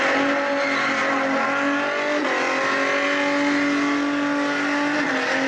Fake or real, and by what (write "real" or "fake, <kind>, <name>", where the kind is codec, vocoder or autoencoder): real